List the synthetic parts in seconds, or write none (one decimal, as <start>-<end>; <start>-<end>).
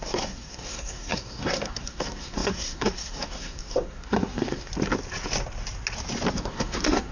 0.0-4.7; 6.3-7.1